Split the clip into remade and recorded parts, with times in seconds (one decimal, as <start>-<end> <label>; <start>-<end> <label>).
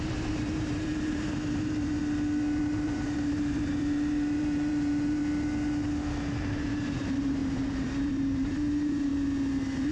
0.0-2.0 remade; 2.0-2.6 recorded; 2.6-5.2 remade; 5.2-6.2 recorded; 6.2-9.1 remade; 9.1-9.9 recorded